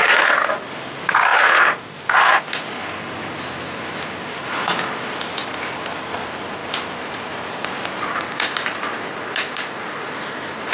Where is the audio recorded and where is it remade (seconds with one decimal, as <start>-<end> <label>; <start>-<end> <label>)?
0.0-6.6 recorded; 6.6-10.7 remade